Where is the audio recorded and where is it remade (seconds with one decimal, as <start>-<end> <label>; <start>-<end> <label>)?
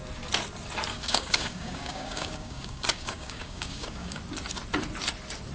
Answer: 0.0-0.9 recorded; 0.9-4.2 remade; 4.2-5.5 recorded